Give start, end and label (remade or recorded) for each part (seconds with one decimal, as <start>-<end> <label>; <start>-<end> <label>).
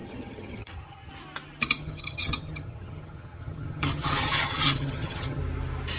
0.0-1.1 remade; 1.1-1.8 recorded; 1.8-5.4 remade; 5.4-6.0 recorded